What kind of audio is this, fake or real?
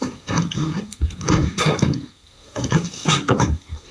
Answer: fake